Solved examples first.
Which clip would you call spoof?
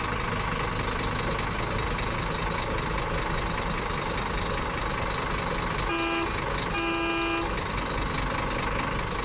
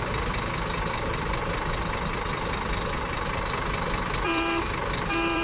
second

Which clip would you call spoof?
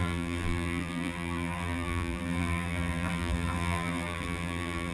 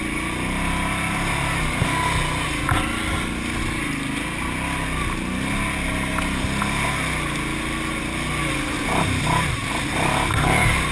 first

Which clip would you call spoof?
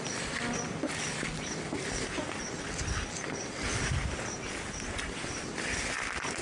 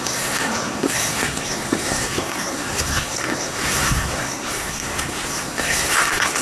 second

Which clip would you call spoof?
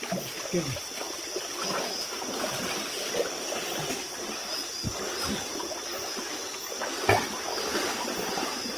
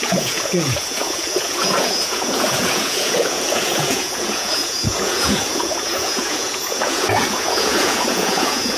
second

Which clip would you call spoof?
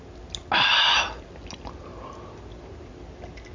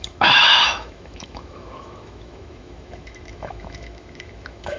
second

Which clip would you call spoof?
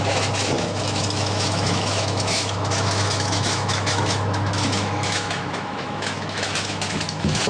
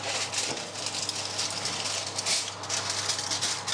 first